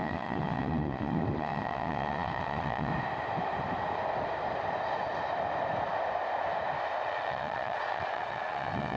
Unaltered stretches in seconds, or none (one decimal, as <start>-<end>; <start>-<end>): 2.9-7.0